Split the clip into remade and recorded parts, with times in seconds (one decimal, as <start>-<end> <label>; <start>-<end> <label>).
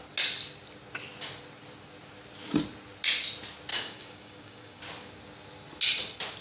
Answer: 0.0-3.7 recorded; 3.7-4.8 remade; 4.8-6.4 recorded